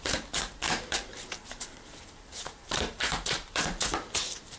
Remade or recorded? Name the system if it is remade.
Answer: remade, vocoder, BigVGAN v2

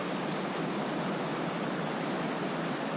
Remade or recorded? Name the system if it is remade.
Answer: recorded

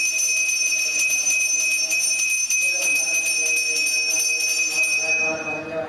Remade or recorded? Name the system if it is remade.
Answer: recorded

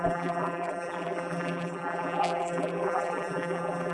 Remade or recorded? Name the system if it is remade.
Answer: remade, vocoder, BigVGAN v2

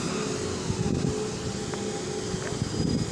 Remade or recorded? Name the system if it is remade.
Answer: recorded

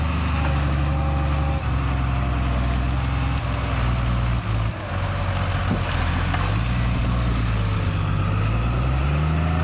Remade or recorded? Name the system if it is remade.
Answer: recorded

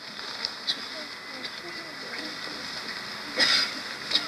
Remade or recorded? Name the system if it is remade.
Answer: recorded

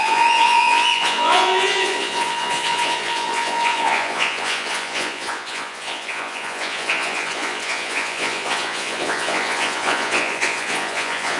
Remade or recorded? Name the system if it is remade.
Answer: remade, vocoder, Vocos